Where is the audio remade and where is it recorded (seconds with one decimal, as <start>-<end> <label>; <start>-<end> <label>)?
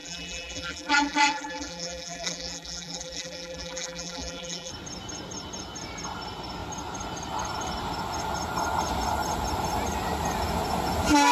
0.0-4.7 remade; 4.7-11.3 recorded